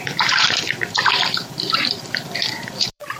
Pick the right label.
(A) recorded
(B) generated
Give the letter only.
B